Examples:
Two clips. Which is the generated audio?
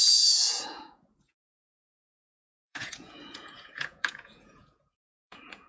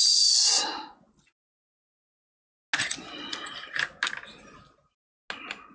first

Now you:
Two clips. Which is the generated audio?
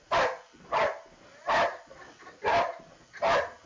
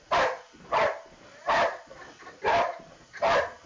second